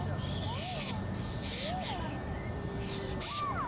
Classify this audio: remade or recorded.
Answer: recorded